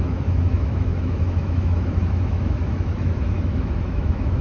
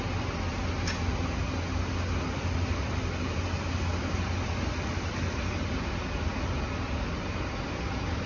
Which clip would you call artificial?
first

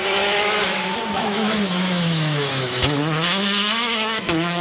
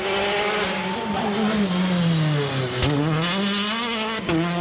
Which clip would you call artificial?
first